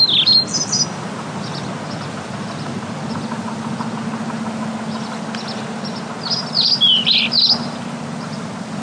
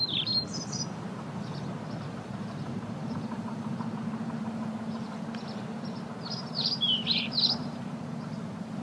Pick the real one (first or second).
first